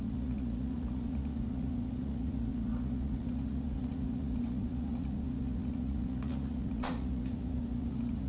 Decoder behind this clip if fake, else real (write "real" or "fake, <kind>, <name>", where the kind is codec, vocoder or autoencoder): fake, vocoder, Vocos